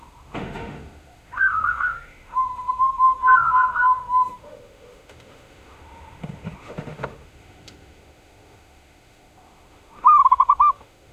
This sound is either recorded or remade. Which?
remade